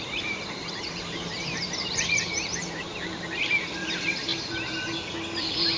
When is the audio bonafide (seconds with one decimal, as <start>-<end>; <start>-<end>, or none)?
4.3-5.8